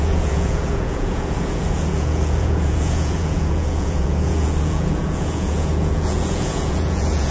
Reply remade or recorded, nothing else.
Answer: remade